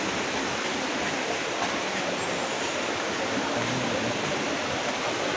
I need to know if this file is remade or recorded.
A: recorded